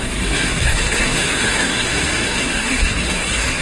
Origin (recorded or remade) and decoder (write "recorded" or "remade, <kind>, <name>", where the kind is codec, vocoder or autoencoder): remade, codec, SNAC